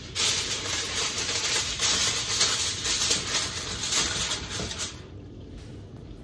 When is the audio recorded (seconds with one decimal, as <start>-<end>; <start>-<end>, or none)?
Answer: 2.0-5.7